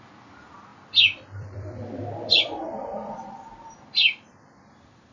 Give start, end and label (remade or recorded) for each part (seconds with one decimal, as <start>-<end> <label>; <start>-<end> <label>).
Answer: 0.0-5.1 remade